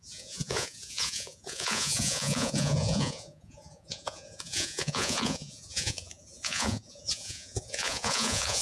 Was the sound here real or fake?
fake